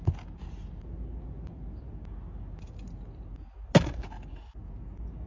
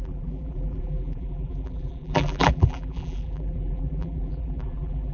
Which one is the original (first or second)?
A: first